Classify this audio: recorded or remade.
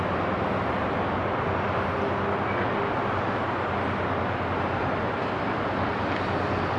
recorded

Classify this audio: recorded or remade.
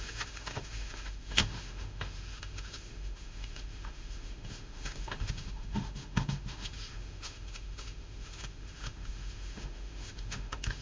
remade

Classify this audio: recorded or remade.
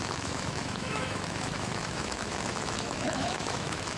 remade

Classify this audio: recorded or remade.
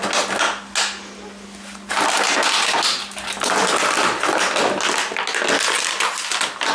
recorded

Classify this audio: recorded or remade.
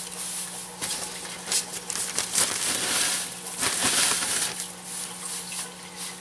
recorded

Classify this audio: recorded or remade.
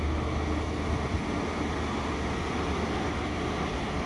recorded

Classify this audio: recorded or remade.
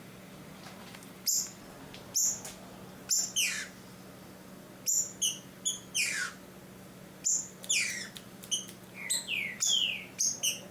recorded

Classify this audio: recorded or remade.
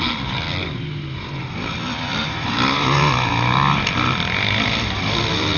recorded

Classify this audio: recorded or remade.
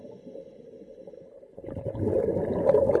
recorded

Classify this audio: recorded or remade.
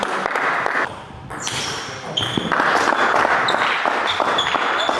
recorded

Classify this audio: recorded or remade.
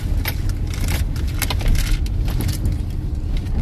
recorded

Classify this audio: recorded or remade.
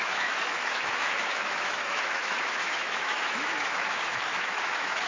remade